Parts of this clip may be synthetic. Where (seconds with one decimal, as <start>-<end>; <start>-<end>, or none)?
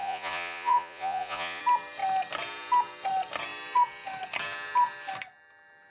0.0-1.6